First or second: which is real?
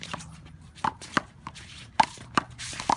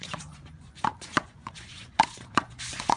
first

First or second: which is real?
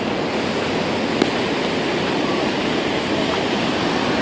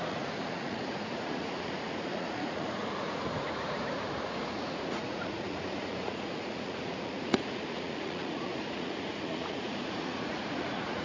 first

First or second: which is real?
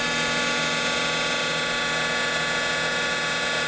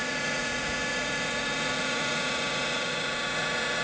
first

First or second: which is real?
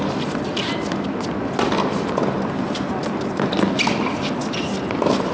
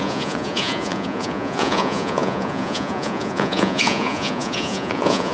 first